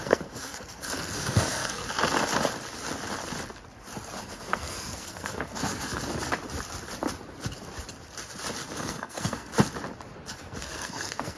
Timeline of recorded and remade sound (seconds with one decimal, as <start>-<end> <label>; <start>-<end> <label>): 0.0-1.8 remade; 1.8-4.2 recorded; 4.2-6.0 remade; 6.0-8.7 recorded; 8.7-9.5 remade; 9.5-10.3 recorded; 10.3-11.4 remade